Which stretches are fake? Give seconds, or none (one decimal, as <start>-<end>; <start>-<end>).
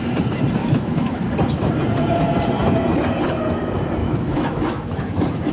0.6-1.2; 4.0-5.5